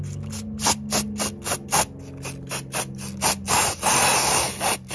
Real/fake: real